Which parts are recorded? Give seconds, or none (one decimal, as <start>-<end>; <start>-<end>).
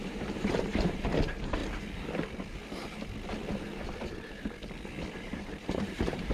1.6-5.1